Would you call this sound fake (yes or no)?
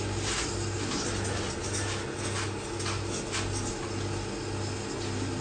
no